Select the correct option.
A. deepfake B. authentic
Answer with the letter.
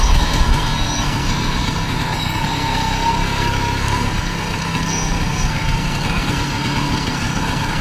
A